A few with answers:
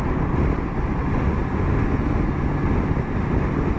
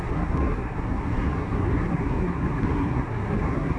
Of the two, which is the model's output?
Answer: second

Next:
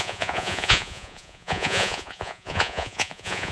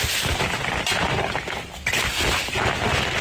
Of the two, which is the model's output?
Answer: first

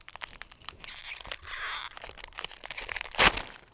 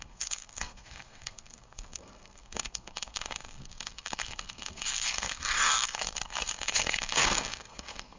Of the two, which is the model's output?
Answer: second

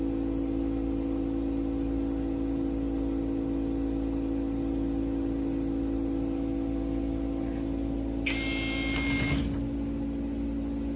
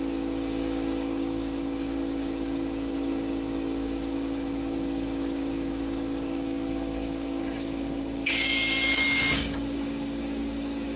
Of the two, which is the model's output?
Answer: second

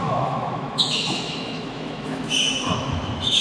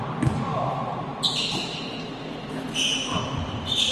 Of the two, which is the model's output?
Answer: first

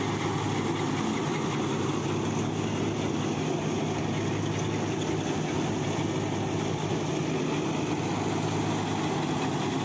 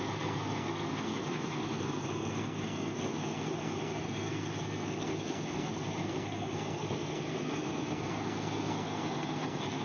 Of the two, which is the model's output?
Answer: second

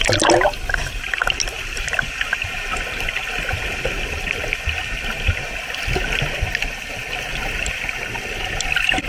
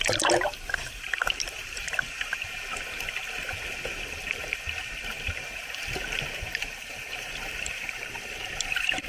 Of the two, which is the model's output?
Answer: second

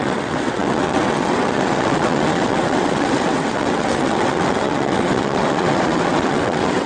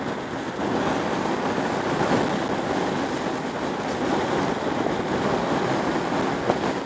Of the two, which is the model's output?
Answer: first